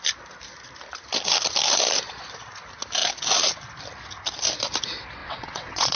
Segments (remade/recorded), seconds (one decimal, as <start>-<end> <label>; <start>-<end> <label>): 0.0-5.2 recorded; 5.2-6.0 remade